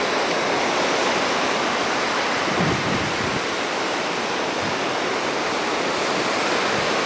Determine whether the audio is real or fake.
fake